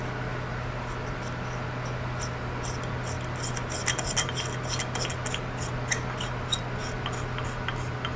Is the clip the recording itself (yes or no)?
yes